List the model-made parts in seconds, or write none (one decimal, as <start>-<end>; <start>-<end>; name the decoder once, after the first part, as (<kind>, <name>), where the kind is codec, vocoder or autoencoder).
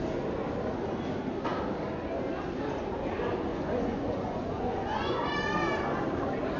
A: 3.5-5.2 (vocoder, Vocos)